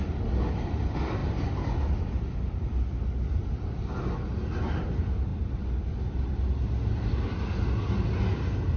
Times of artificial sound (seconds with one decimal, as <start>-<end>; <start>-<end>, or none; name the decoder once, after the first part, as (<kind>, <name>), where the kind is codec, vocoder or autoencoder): none

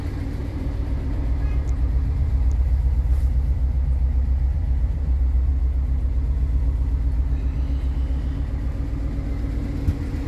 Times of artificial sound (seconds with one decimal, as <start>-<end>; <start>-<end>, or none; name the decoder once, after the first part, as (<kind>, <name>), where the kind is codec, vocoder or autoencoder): 0.4-5.5 (vocoder, BigVGAN v2)

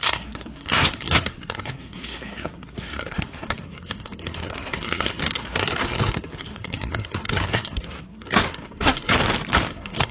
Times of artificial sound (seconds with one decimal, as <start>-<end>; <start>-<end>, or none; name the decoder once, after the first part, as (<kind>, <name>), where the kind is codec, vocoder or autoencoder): 0.0-9.1 (codec, SNAC); 9.7-10.1